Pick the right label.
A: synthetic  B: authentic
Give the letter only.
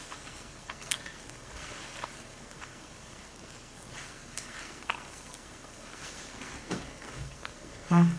A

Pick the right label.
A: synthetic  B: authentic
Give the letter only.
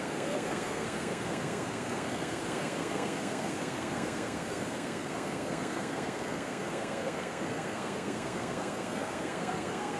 A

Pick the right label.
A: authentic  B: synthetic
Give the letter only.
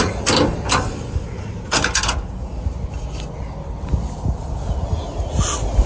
A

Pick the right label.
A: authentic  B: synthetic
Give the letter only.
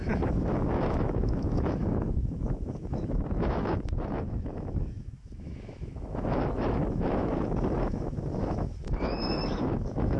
B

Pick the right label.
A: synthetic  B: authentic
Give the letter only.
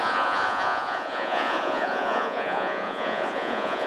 A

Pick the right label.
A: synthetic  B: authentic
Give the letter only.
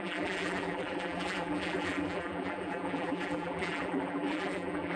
A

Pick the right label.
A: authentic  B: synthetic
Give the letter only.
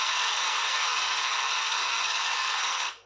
B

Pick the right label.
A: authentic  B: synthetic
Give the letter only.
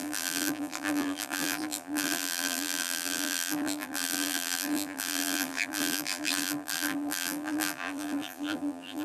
B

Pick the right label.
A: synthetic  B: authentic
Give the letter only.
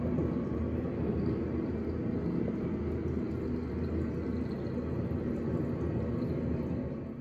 B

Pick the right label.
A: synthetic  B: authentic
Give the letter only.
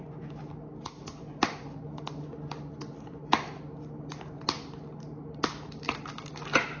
B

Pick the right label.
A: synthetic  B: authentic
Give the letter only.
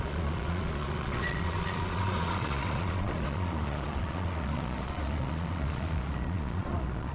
A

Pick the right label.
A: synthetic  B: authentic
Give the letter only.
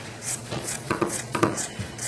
A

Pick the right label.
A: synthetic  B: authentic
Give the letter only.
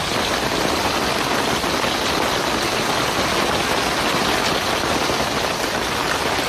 B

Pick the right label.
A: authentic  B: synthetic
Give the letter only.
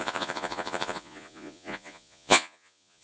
B